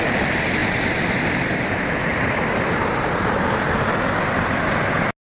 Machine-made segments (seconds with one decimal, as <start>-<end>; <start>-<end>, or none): 0.6-3.8